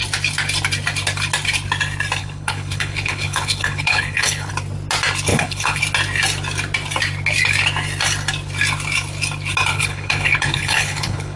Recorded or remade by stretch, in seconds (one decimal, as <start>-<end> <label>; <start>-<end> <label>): 0.0-2.2 recorded; 2.2-4.5 remade; 4.5-5.3 recorded; 5.3-5.8 remade; 5.8-9.7 recorded; 9.7-11.4 remade